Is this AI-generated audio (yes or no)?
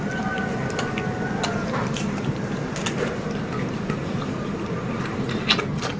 no